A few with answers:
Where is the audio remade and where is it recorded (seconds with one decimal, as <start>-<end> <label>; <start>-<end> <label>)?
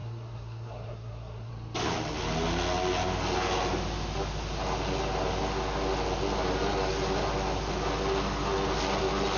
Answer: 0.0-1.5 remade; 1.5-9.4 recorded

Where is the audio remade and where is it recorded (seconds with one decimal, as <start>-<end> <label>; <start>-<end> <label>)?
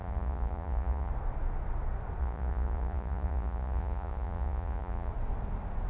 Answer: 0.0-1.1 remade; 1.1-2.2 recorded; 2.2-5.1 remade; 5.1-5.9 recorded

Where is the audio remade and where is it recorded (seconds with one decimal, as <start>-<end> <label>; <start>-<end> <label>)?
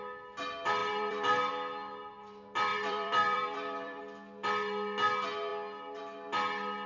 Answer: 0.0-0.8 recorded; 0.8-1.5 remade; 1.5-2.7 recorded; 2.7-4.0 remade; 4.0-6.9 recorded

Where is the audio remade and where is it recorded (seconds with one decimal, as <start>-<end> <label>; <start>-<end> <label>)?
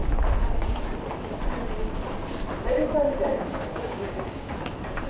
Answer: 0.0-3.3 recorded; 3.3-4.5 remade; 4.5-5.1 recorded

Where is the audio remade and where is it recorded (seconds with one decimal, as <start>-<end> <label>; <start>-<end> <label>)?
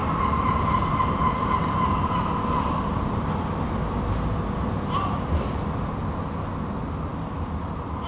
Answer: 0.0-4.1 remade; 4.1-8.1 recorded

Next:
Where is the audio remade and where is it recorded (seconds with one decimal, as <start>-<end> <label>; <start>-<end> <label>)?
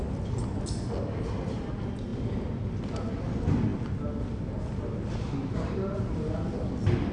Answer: 0.0-7.1 recorded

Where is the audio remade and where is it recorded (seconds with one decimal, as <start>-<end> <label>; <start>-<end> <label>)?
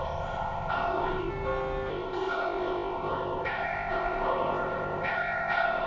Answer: 0.0-1.3 remade; 1.3-1.9 recorded; 1.9-5.9 remade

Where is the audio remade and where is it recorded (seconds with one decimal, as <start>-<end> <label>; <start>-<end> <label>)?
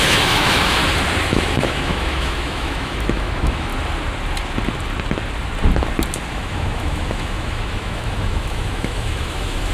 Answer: 0.0-0.8 remade; 0.8-1.3 recorded; 1.3-3.7 remade; 3.7-6.3 recorded; 6.3-9.7 remade